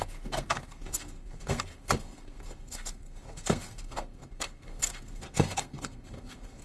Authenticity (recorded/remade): remade